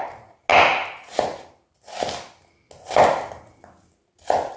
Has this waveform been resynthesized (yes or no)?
no